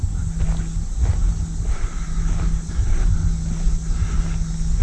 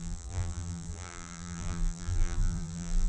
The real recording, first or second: first